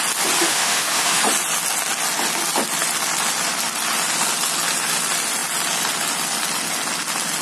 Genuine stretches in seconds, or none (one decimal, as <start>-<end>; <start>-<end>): 0.0-0.4; 1.2-7.4